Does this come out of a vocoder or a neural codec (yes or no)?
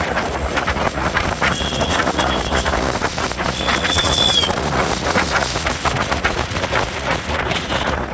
yes